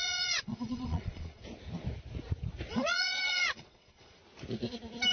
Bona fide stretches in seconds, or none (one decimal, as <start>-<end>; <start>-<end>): 1.4-2.7; 4.2-5.1